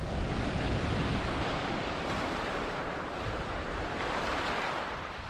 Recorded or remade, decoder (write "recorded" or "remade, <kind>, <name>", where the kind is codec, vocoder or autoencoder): remade, vocoder, BigVGAN v2